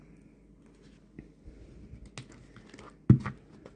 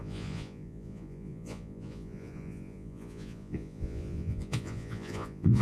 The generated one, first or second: second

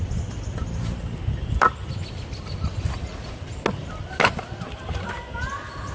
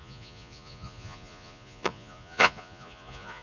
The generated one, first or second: second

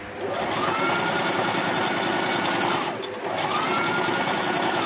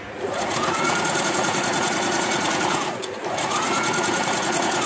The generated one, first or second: second